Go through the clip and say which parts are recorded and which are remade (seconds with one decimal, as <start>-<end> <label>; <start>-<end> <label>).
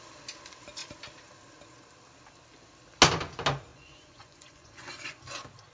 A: 0.0-3.7 recorded; 3.7-5.2 remade; 5.2-5.7 recorded